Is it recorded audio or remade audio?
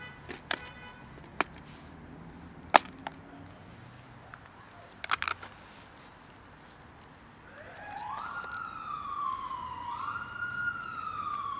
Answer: recorded